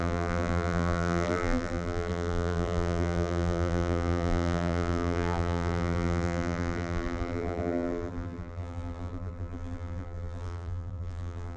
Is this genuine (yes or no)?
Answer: no